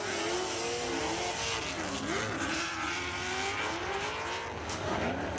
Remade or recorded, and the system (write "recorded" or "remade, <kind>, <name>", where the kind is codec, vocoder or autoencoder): recorded